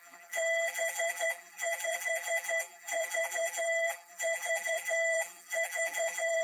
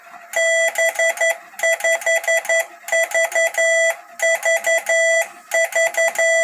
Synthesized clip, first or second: first